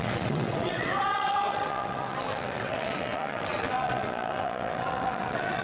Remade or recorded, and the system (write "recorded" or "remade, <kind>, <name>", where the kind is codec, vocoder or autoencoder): remade, vocoder, WaveNeXt